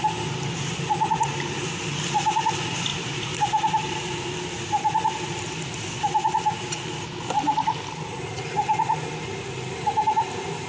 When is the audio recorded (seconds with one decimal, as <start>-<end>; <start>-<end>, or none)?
0.0-10.7